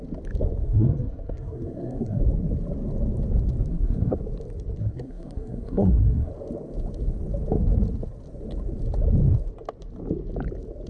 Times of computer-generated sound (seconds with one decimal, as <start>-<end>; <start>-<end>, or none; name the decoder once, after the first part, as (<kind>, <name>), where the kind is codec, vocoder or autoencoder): 0.6-2.2 (codec, SNAC); 3.7-4.2; 4.8-6.3